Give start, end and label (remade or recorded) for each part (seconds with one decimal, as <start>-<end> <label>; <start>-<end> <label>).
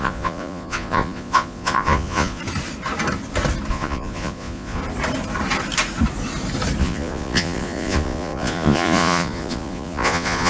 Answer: 0.0-2.4 remade; 2.4-3.7 recorded; 3.7-4.8 remade; 4.8-6.8 recorded; 6.8-10.5 remade